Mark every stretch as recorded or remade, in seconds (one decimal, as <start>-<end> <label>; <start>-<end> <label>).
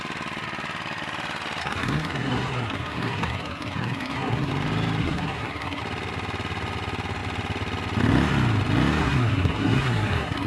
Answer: 0.0-1.6 recorded; 1.6-4.5 remade; 4.5-5.0 recorded; 5.0-5.8 remade; 5.8-9.0 recorded; 9.0-10.5 remade